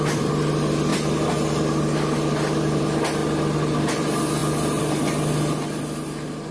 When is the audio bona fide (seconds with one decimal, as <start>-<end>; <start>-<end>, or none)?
0.0-6.5